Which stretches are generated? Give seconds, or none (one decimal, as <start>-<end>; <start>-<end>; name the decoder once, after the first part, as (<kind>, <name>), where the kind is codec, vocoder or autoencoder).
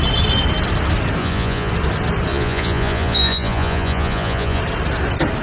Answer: 1.2-1.7 (vocoder, Vocos); 2.3-4.6